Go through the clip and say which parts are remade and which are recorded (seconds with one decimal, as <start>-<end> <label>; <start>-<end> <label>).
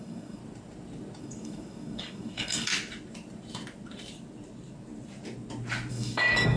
0.0-0.4 remade; 0.4-1.2 recorded; 1.2-2.7 remade; 2.7-5.9 recorded; 5.9-6.6 remade